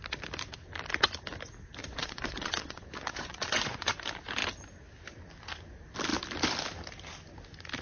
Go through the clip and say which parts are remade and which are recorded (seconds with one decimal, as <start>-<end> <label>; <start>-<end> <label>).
0.0-1.8 recorded; 1.8-3.9 remade; 3.9-7.8 recorded